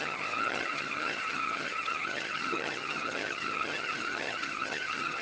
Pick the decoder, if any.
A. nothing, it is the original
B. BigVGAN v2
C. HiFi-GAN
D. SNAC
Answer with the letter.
C